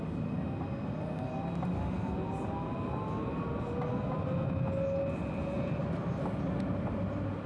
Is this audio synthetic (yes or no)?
no